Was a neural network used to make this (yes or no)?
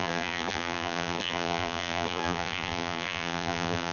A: yes